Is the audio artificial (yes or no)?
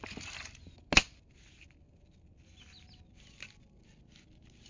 no